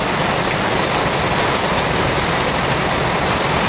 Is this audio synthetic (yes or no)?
no